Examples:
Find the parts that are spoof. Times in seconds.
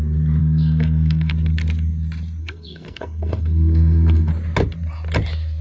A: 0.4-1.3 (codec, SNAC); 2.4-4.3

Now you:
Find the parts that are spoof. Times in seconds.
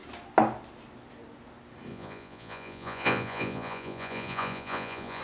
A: 1.9-5.2 (vocoder, Vocos)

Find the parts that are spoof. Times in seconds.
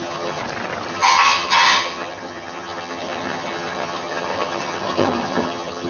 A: 0.0-0.4 (vocoder, HiFi-GAN); 0.9-5.9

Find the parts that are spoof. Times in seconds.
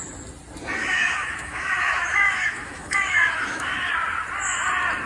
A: 0.8-3.9 (autoencoder, DAC-VAE)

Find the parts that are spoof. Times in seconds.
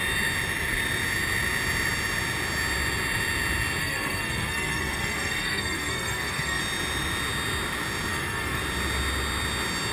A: 3.8-6.6 (codec, SNAC); 8.1-8.6